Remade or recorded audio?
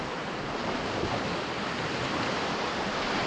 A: recorded